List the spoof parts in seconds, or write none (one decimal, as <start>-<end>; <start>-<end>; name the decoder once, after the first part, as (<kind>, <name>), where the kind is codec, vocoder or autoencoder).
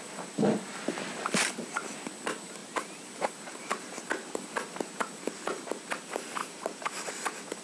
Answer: 2.6-4.0 (vocoder, BigVGAN v2); 6.4-7.1